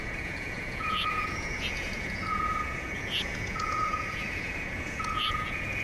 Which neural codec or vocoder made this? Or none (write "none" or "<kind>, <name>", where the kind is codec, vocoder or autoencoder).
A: vocoder, Vocos